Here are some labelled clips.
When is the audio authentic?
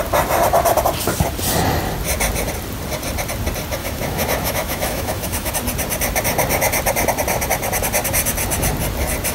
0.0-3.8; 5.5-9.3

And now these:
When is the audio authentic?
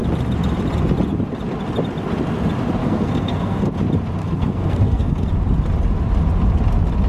0.0-2.8; 3.7-4.2; 5.3-7.1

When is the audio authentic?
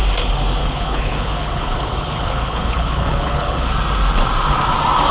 0.0-0.6; 3.7-5.1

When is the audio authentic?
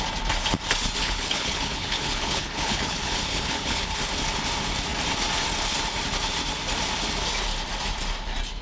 0.0-1.0; 4.0-8.6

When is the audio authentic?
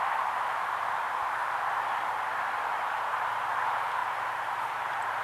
1.4-3.3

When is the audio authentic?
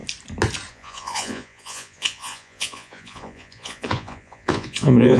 0.0-0.7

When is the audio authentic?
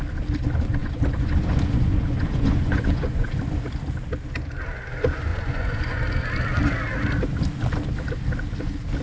0.0-0.8; 3.4-5.3; 6.0-9.0